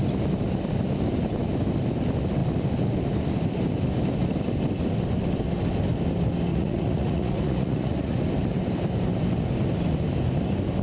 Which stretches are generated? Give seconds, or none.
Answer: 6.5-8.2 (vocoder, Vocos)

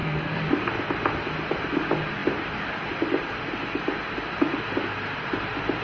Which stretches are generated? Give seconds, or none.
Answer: 0.0-0.5 (codec, SNAC)

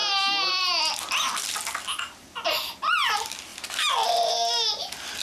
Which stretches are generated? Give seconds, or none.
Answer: 1.9-2.5 (vocoder, BigVGAN v2); 3.5-4.3

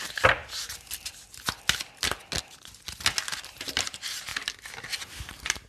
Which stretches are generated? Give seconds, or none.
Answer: 0.0-0.4 (vocoder, BigVGAN v2); 3.2-4.3; 5.1-5.7

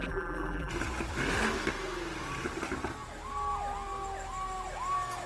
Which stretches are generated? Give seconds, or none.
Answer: 0.0-0.7 (vocoder, BigVGAN v2)

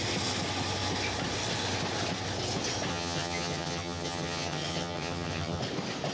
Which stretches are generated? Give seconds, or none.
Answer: 2.9-5.6 (vocoder, HiFi-GAN)

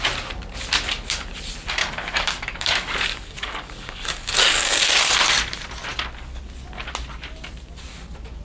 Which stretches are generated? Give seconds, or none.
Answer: 1.8-4.8 (codec, DAC)

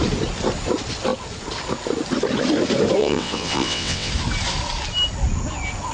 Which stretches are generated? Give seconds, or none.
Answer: 3.0-4.1 (vocoder, WaveNeXt)